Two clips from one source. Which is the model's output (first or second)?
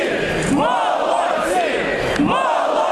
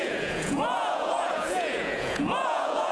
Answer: second